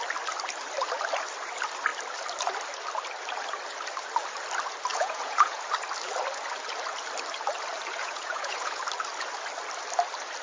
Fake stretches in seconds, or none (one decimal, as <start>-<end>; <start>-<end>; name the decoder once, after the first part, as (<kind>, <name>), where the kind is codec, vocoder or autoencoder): 4.9-5.6 (vocoder, Vocos); 8.0-8.8

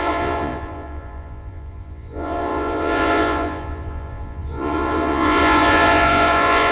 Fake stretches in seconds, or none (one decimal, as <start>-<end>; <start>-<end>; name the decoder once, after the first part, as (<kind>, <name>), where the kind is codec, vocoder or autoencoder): 0.0-6.7 (vocoder, Vocos)

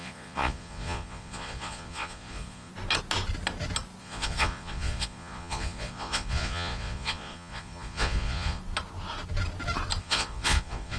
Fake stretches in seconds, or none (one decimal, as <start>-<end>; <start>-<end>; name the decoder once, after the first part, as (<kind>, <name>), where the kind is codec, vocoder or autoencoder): 0.0-2.7 (vocoder, Vocos); 4.0-8.6; 10.0-11.0

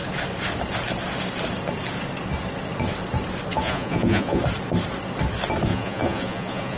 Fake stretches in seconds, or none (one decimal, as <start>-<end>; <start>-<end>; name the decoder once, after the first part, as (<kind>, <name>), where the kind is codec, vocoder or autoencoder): 3.5-4.4 (vocoder, Vocos); 5.7-6.8

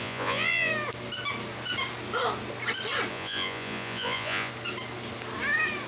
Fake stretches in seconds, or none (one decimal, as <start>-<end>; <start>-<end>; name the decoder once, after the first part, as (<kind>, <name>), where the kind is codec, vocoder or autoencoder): 0.0-0.7 (vocoder, Vocos); 3.1-4.5